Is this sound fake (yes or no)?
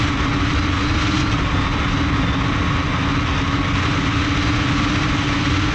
no